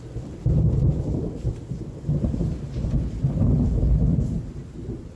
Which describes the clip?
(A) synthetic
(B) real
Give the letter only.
B